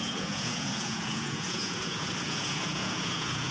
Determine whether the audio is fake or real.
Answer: fake